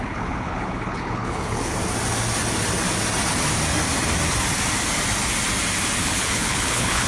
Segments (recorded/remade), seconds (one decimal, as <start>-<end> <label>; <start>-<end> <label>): 0.0-1.7 remade; 1.7-6.0 recorded; 6.0-7.1 remade

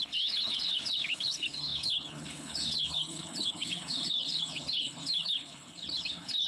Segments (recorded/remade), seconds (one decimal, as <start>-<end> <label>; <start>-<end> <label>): 0.0-6.5 remade

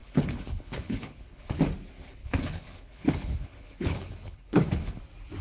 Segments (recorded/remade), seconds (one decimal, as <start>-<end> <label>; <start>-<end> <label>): 0.0-1.6 remade; 1.6-2.2 recorded; 2.2-5.0 remade; 5.0-5.4 recorded

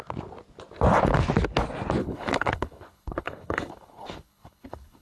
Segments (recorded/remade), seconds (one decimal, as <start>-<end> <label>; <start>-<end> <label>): 0.0-2.0 recorded; 2.0-5.0 remade

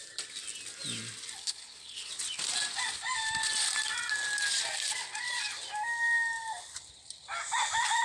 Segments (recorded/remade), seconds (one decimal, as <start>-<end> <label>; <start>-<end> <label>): 0.0-1.4 recorded; 1.4-2.1 remade; 2.1-8.0 recorded